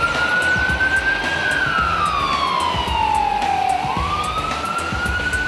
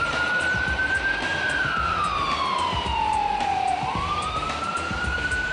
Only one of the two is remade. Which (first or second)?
second